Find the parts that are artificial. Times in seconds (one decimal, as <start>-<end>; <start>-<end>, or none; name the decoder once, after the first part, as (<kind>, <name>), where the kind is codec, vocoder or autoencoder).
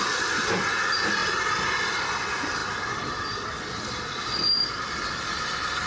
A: none